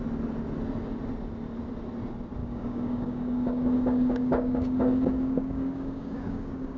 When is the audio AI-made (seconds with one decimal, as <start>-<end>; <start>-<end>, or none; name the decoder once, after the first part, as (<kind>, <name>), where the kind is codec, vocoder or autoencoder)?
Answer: 2.4-6.8 (codec, DAC)